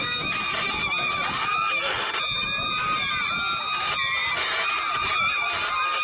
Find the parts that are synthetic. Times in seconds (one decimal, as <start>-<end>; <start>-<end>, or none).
none